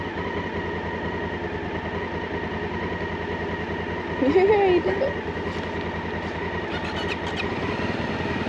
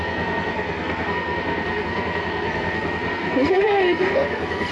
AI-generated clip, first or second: second